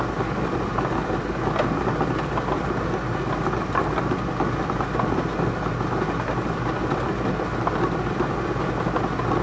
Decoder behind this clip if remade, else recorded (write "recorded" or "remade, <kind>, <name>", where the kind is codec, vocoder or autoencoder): recorded